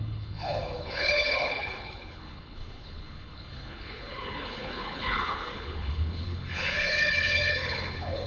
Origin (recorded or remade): remade